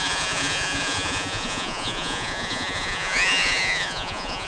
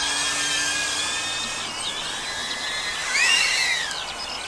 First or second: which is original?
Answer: second